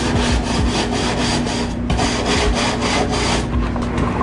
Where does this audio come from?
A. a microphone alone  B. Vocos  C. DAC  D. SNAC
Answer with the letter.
A